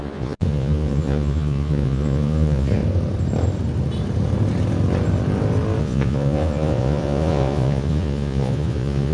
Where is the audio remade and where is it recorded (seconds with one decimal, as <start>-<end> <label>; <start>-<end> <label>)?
0.0-2.8 remade; 2.8-5.8 recorded; 5.8-9.1 remade